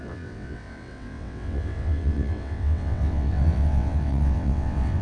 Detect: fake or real fake